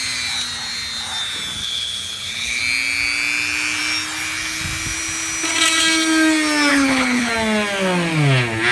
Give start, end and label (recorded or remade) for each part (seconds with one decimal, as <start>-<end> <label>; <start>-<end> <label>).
0.0-1.6 recorded; 1.6-2.6 remade; 2.6-6.7 recorded; 6.7-7.3 remade; 7.3-8.7 recorded